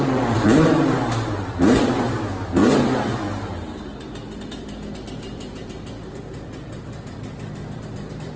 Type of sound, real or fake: fake